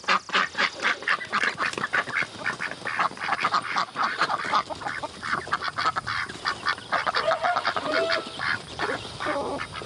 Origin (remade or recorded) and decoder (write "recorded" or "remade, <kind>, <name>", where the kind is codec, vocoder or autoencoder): recorded